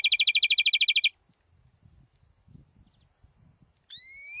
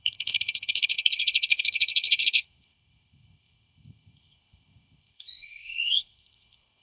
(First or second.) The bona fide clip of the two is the first